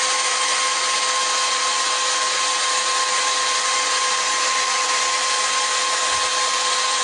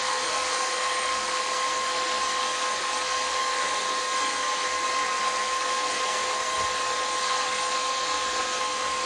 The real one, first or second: first